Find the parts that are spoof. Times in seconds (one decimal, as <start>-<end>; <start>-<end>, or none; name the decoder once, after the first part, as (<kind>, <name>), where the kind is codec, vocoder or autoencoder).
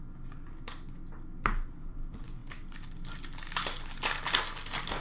none